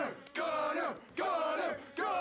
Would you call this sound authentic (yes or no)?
yes